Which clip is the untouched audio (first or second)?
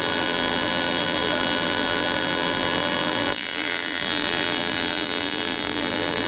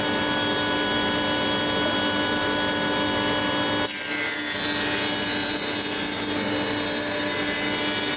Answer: second